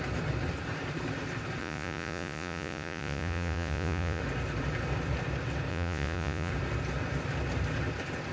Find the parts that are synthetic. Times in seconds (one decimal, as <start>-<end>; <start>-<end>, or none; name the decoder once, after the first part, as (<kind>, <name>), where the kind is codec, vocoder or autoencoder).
1.6-4.2 (vocoder, Vocos); 5.7-6.5